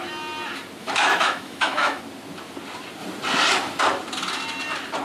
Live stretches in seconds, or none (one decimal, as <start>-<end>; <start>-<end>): 0.0-0.8; 2.0-5.0

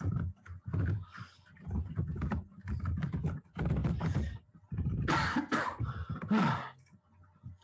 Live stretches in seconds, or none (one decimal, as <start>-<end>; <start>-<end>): 0.0-7.6

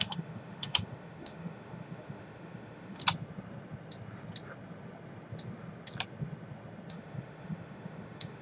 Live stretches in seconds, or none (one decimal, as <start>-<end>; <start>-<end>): 3.0-6.9

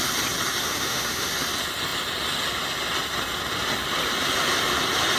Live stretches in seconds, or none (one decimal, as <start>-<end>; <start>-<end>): 0.0-0.6; 1.3-5.2

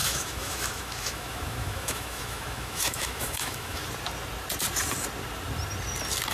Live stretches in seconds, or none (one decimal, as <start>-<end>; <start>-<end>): 3.8-6.3